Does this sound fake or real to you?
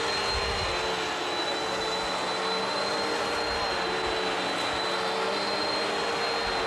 real